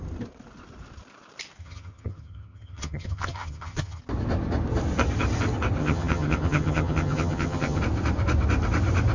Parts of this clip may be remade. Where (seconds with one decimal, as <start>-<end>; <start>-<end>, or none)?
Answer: 1.6-4.0; 5.8-7.8